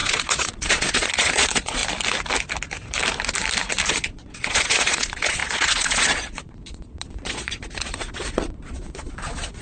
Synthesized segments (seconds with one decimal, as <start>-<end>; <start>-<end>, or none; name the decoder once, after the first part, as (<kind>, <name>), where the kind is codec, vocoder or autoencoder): 0.0-1.8 (vocoder, Vocos); 3.9-9.6